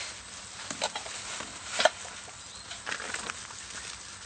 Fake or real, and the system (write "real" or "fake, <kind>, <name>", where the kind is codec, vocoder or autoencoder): real